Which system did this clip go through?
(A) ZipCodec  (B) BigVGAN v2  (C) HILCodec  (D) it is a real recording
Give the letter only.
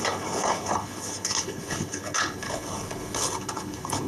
C